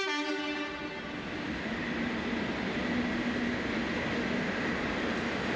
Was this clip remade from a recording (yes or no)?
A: no